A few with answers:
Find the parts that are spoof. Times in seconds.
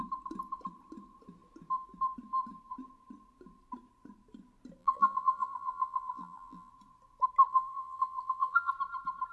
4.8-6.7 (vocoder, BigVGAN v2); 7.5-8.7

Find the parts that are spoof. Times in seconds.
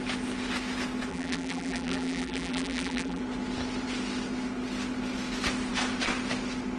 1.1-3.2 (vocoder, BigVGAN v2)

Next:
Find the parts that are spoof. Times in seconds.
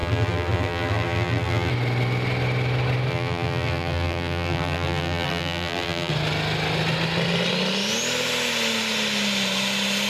0.0-1.7 (vocoder, BigVGAN v2); 3.1-6.1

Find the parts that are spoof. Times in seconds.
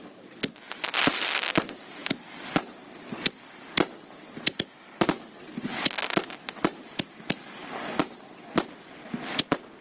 none